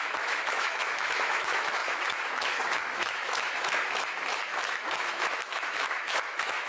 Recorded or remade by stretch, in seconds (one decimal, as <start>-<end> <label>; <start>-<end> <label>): 0.0-6.7 remade